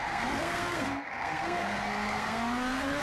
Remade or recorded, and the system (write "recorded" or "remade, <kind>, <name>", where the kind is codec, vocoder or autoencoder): remade, codec, SNAC